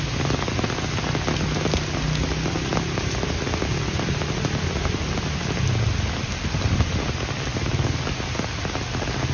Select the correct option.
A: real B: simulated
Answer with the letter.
A